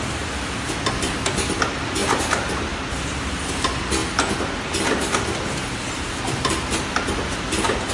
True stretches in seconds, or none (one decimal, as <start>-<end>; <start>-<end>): 0.0-7.9